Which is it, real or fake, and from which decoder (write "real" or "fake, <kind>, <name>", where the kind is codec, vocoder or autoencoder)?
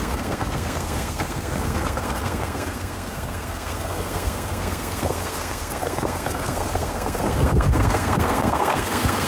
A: fake, codec, SNAC